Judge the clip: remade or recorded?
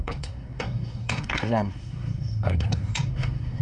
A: remade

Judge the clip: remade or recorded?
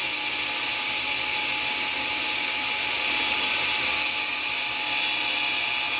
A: recorded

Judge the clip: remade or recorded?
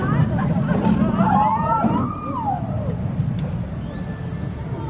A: recorded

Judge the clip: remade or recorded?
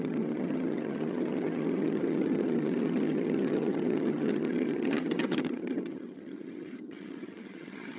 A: remade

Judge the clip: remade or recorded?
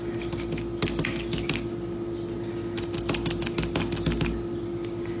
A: recorded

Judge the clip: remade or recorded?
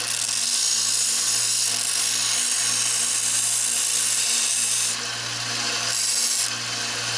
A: recorded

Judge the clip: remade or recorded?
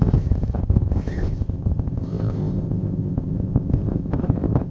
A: remade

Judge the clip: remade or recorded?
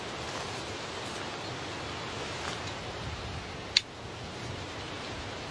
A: recorded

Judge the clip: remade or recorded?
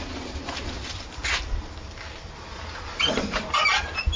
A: recorded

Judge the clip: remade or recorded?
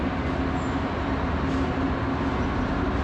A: recorded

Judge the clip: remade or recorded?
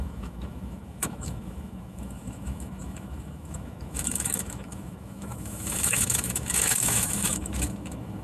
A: remade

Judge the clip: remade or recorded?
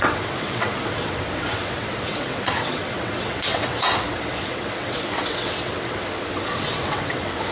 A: remade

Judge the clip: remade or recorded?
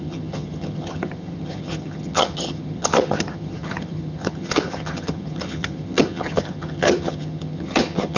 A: remade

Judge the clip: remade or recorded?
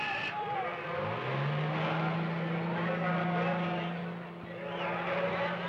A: recorded